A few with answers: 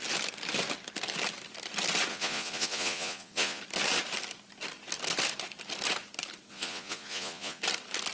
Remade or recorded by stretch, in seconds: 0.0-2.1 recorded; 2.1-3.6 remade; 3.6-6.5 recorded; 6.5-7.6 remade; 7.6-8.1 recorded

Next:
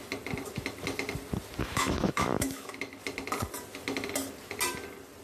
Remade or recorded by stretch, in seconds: 0.0-1.6 recorded; 1.6-2.8 remade; 2.8-5.2 recorded

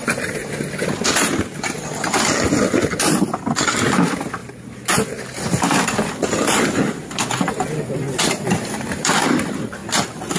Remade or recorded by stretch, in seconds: 0.0-10.4 recorded